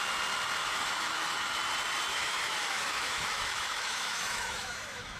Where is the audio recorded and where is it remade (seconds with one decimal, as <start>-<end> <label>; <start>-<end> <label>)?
0.0-0.6 recorded; 0.6-1.6 remade; 1.6-2.1 recorded; 2.1-5.2 remade

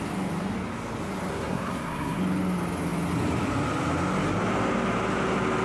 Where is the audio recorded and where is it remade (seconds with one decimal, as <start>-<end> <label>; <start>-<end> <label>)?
0.0-1.3 recorded; 1.3-2.2 remade; 2.2-5.6 recorded

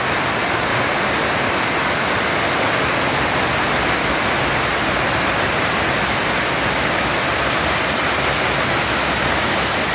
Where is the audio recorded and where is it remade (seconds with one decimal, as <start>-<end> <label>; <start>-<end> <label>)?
0.0-9.9 recorded

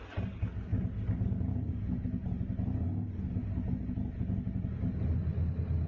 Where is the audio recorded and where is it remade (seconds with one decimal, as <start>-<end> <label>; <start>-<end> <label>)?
0.0-5.9 recorded

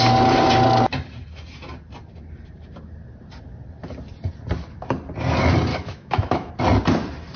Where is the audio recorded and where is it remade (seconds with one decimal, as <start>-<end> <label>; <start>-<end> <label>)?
0.0-5.7 recorded; 5.7-6.5 remade; 6.5-7.4 recorded